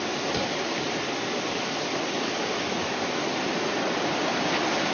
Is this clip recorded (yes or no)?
yes